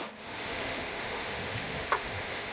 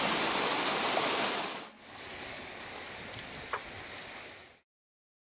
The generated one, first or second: first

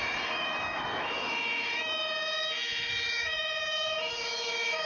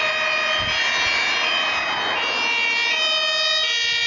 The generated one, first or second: first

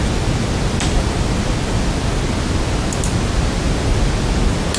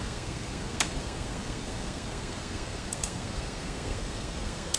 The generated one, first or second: second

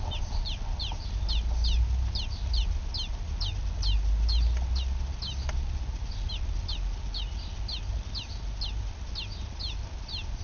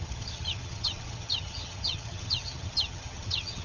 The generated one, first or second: second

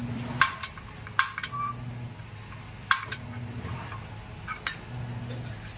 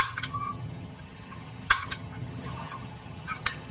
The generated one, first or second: second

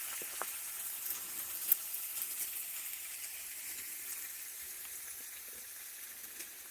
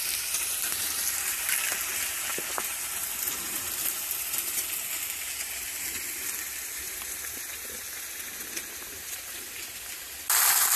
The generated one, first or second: second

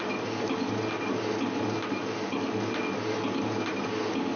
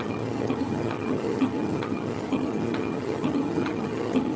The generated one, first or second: second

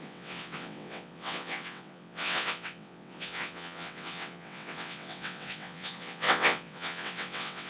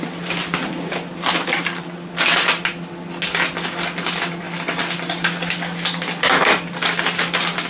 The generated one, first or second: first